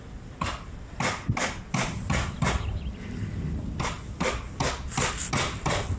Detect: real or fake real